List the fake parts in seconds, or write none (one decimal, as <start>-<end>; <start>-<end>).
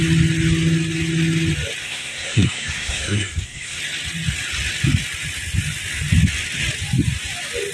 1.8-3.8